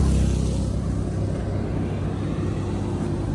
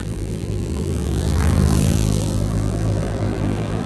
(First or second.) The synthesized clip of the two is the second